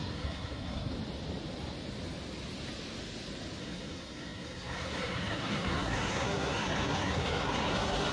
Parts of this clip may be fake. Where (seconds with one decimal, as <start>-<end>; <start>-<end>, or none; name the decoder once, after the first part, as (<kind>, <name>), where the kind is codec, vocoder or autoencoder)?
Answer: 0.0-0.9 (codec, SNAC); 3.6-8.1